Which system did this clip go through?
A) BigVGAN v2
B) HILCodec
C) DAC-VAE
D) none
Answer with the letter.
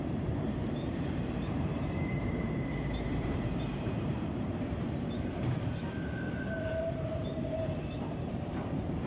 A